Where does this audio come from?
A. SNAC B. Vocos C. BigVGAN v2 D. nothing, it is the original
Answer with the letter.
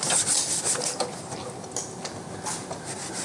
D